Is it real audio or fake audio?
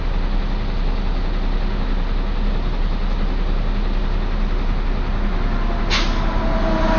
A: real